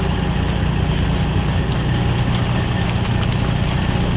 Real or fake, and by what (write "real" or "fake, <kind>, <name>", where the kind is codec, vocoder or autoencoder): real